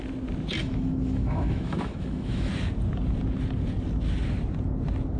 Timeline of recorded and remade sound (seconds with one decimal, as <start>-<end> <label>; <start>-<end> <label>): 0.0-0.6 recorded; 0.6-2.5 remade; 2.5-5.2 recorded